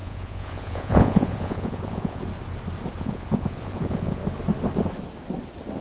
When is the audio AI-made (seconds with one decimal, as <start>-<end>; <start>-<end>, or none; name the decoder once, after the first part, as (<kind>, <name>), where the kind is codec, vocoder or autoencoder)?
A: 0.0-2.2 (vocoder, Vocos); 3.0-4.2